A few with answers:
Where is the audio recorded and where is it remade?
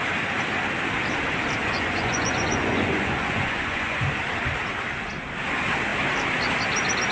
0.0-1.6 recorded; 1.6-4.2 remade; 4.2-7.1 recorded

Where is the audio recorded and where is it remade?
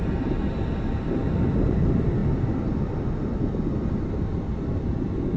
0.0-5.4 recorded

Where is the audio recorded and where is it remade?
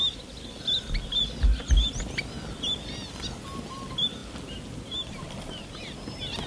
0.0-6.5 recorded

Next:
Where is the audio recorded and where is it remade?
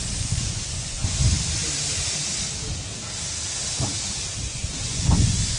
0.0-1.0 remade; 1.0-4.4 recorded; 4.4-5.6 remade